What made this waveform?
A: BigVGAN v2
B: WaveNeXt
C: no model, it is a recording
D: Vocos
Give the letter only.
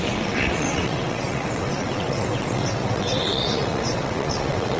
B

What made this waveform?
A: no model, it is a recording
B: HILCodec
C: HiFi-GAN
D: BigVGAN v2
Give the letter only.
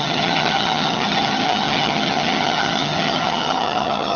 C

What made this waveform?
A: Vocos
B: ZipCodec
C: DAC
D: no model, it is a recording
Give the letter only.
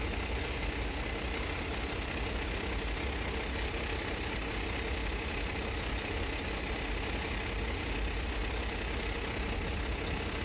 D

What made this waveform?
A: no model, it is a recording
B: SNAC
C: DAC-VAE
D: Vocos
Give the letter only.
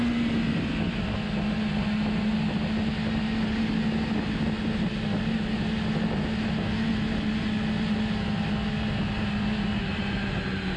A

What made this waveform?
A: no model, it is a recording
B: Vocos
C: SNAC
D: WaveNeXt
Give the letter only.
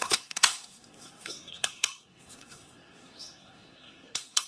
C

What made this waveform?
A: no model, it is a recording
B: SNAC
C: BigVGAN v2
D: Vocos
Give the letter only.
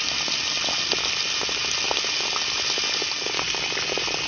A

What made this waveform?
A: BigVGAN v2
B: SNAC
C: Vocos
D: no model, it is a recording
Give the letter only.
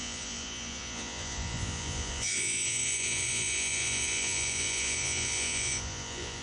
C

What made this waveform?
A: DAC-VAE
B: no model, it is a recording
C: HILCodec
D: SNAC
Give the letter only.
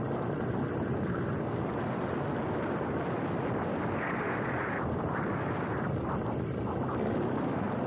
B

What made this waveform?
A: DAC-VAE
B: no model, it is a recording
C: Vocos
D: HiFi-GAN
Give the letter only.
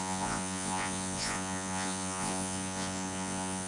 C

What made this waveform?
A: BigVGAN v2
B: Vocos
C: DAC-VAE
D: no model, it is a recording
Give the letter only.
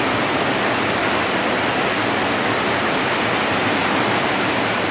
D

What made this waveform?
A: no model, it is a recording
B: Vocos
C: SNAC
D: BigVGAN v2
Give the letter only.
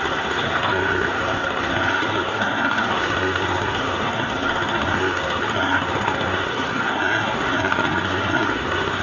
C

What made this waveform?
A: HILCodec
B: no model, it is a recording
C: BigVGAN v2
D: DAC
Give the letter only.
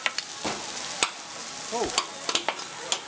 B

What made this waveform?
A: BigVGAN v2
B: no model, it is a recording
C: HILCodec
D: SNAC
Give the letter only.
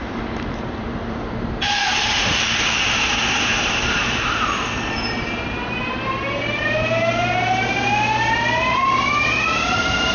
A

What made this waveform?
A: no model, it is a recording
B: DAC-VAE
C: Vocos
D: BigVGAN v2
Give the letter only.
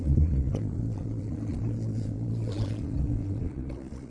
C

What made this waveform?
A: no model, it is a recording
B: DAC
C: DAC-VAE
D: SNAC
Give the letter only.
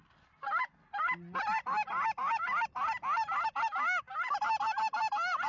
A